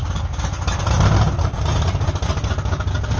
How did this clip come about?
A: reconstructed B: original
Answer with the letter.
B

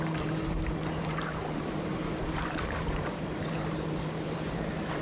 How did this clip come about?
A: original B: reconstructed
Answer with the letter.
B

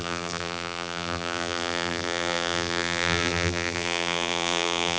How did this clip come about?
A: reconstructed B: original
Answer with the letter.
A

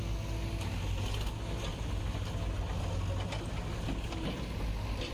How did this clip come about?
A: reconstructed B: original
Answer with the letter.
B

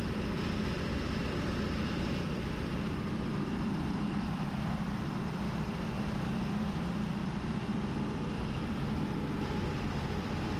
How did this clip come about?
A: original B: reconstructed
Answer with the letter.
B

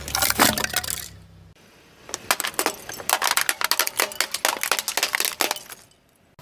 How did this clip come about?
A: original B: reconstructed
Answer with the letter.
A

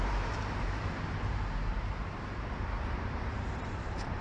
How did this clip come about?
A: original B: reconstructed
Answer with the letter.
B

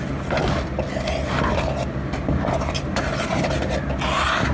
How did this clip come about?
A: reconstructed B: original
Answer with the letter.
B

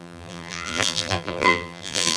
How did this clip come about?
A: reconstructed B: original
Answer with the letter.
A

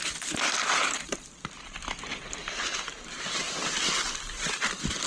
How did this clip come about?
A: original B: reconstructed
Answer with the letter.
B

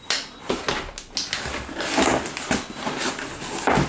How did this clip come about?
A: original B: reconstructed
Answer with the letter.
A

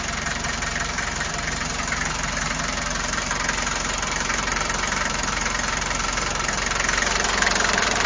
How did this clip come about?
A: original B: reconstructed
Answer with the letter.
B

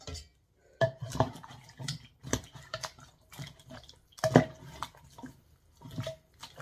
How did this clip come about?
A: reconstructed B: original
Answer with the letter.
B